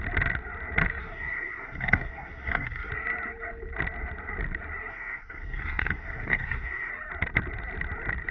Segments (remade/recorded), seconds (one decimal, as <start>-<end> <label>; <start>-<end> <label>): 0.0-1.0 recorded; 1.0-2.9 remade; 2.9-4.9 recorded; 4.9-6.9 remade; 6.9-8.3 recorded